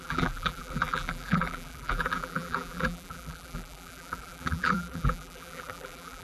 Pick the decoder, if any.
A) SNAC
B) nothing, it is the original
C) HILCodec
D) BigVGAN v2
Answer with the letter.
D